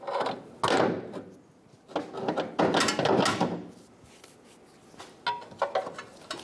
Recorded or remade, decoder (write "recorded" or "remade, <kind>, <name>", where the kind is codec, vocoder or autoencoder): recorded